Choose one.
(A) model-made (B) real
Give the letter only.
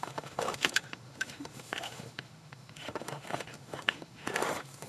A